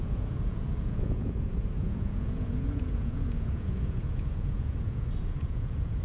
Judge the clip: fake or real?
fake